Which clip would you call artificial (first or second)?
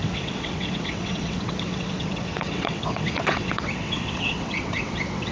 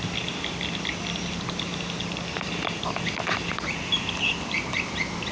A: first